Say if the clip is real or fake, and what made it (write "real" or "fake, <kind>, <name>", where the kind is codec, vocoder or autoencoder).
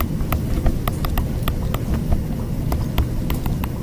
real